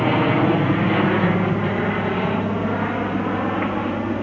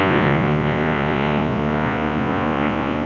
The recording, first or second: first